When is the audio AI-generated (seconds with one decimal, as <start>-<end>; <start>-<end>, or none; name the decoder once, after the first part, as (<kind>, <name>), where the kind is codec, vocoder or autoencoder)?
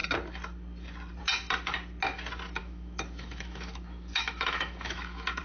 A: 2.6-5.4 (autoencoder, DAC-VAE)